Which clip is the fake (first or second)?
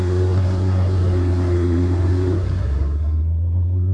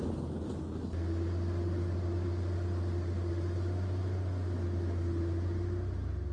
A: first